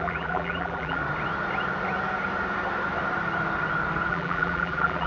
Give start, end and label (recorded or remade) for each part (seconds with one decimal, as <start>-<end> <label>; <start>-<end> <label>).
0.0-1.0 remade; 1.0-4.1 recorded; 4.1-5.1 remade